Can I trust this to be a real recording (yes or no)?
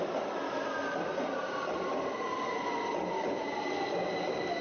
yes